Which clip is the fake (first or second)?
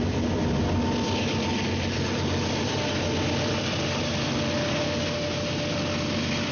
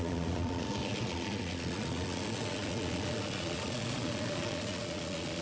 second